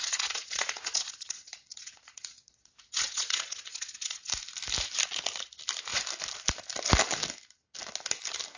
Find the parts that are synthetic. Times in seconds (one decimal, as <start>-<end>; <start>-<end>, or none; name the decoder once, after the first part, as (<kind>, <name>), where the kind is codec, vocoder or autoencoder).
0.0-4.3 (vocoder, Vocos)